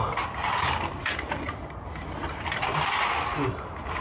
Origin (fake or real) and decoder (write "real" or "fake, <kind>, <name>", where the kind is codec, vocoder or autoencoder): real